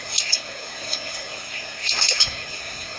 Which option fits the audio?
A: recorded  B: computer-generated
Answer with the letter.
B